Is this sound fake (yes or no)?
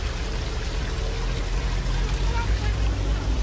no